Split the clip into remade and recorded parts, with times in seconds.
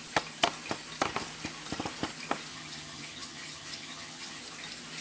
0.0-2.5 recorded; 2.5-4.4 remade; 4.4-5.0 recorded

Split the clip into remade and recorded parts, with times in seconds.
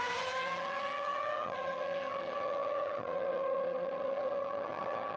0.0-5.2 remade